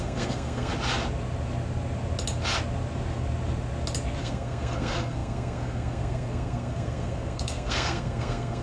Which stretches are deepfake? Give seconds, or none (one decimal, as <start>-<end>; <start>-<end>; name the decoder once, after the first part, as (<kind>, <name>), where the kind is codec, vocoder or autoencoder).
0.0-0.7 (codec, SNAC); 4.2-8.6

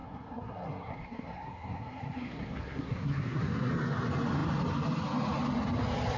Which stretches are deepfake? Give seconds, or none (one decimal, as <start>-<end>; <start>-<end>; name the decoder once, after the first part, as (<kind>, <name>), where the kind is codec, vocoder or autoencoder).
0.0-3.7 (codec, SNAC)

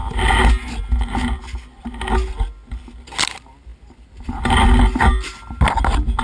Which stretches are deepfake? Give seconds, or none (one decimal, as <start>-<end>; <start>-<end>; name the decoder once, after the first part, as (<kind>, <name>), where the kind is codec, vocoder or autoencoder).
none

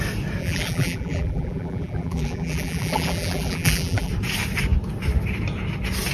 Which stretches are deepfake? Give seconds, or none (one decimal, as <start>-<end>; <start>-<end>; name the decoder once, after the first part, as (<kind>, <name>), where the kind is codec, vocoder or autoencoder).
0.4-4.1 (vocoder, BigVGAN v2)

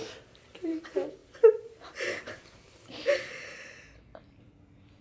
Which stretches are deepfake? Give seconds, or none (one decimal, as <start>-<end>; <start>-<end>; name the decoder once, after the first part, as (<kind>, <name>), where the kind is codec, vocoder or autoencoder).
0.0-5.0 (vocoder, BigVGAN v2)